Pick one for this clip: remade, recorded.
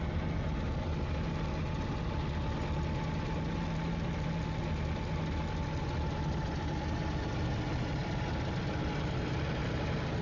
recorded